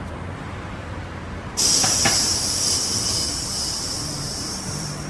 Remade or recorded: remade